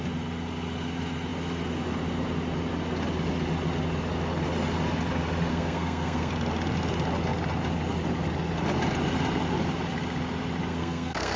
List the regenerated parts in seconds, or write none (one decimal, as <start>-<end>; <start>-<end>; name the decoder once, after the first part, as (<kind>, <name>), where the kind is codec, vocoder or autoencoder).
5.5-6.3 (codec, SNAC); 10.7-11.4